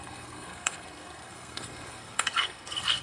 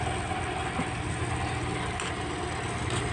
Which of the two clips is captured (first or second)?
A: second